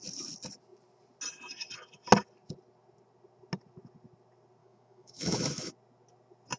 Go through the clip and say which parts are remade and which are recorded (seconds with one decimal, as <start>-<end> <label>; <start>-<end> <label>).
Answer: 0.0-4.6 recorded; 4.6-5.7 remade; 5.7-6.6 recorded